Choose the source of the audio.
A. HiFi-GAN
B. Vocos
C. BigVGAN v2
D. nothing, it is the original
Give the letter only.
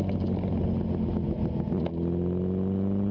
D